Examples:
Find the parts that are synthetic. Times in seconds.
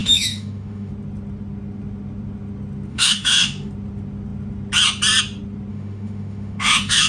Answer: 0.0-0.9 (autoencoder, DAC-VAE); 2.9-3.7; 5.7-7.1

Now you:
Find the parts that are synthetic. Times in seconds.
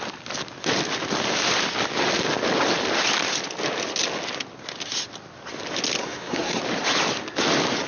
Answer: 6.0-6.6 (codec, SNAC)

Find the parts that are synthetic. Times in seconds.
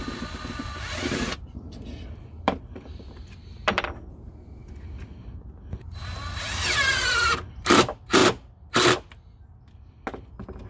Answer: 0.0-4.6 (vocoder, BigVGAN v2); 7.6-8.2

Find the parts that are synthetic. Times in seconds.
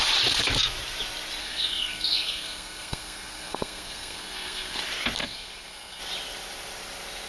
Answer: 1.4-4.8 (codec, SNAC); 5.2-6.0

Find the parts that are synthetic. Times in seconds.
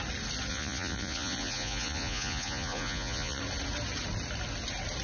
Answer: 0.5-3.4 (vocoder, Vocos)